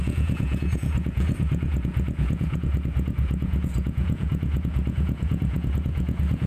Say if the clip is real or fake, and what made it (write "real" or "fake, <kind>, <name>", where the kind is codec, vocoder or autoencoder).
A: fake, vocoder, Vocos